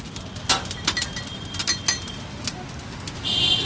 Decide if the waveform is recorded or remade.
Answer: recorded